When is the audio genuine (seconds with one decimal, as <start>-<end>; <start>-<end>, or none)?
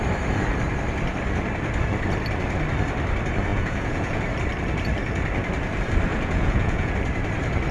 0.0-3.5; 4.2-6.1; 6.9-7.7